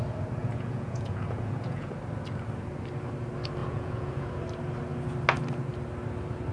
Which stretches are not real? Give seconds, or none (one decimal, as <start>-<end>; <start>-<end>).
0.4-1.9; 3.6-4.3